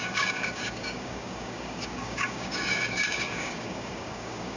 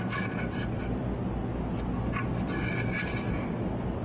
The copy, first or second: first